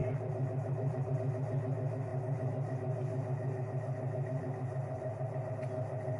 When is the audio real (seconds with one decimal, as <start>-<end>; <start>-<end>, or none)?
1.1-2.1; 5.5-6.2

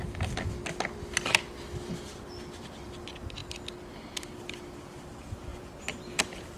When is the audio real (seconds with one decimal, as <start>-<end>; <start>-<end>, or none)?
0.0-5.5

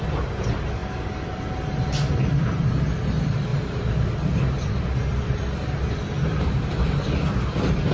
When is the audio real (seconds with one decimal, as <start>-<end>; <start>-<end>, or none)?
0.0-3.5; 4.1-7.9

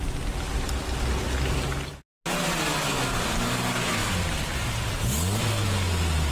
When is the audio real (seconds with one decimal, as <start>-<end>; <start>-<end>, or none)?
0.0-4.0; 4.9-6.3

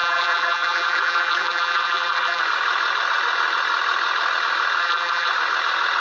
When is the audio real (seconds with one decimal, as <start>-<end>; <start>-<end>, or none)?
2.4-4.8; 5.3-6.0

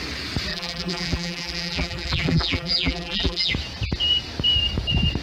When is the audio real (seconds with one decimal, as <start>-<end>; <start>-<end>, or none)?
0.0-0.5; 3.5-5.2

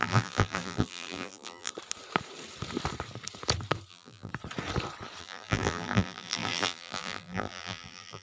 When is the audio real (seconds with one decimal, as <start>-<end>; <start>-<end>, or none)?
1.7-3.9; 4.3-5.2